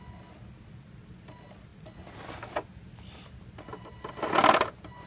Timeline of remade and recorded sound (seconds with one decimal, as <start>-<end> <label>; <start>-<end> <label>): 0.0-5.1 recorded